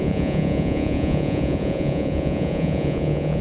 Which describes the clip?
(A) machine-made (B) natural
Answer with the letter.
A